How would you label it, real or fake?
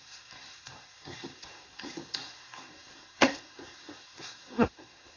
fake